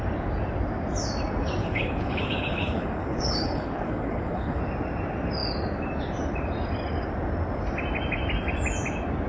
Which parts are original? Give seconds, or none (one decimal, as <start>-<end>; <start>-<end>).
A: 0.0-1.6; 4.6-9.3